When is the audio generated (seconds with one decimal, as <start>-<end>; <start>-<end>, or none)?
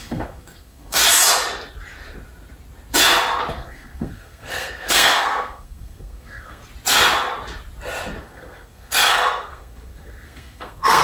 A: 0.0-1.0; 3.5-6.6; 8.2-11.0